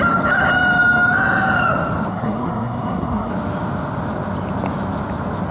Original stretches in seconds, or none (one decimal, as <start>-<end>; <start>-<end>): 0.0-2.1; 3.3-5.5